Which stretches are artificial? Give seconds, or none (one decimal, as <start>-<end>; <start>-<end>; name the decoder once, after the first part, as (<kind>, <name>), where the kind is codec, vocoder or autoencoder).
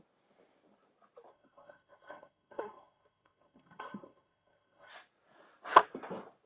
1.3-4.9 (codec, SNAC)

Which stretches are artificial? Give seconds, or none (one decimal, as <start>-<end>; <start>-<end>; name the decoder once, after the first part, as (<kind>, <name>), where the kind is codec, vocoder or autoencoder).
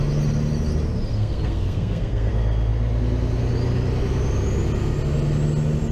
1.1-2.3 (codec, SNAC)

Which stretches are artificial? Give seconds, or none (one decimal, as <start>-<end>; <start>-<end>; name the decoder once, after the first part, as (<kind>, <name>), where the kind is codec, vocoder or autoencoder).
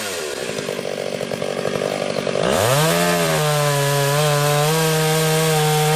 0.4-3.3 (vocoder, BigVGAN v2)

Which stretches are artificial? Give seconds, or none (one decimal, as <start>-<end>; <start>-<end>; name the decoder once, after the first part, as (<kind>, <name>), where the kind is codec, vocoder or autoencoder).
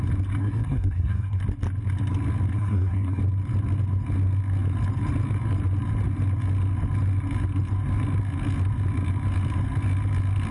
0.4-1.4 (codec, SNAC); 2.5-3.2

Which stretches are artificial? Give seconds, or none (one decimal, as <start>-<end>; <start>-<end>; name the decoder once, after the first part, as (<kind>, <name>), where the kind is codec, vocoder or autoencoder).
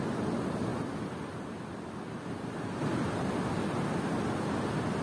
none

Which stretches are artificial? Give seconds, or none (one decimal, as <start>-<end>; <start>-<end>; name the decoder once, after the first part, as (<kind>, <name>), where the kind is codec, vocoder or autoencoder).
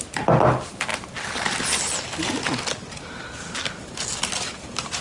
none